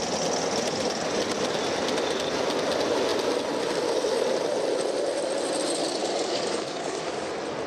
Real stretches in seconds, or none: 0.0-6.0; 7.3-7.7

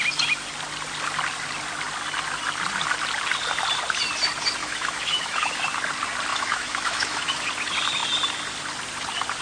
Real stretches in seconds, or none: 0.0-4.6; 5.6-6.3; 7.5-9.4

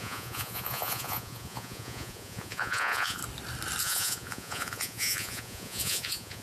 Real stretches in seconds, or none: 3.2-3.8

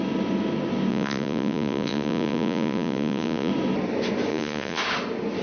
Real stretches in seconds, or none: 0.0-0.9; 3.5-4.3; 4.8-5.4

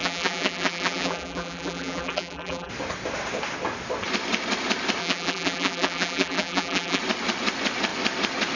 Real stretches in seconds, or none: 2.7-5.0; 7.0-8.6

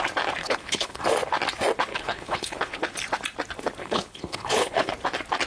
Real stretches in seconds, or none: 0.0-0.4; 1.0-1.9; 2.8-3.8; 4.9-5.5